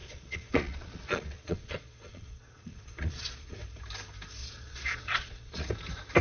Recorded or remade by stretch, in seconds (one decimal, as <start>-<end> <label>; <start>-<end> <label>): 0.0-3.6 remade; 3.6-4.4 recorded; 4.4-5.7 remade; 5.7-6.2 recorded